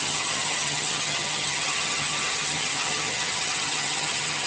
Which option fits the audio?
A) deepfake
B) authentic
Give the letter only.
A